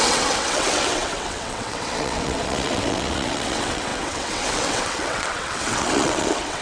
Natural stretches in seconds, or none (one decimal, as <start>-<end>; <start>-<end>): none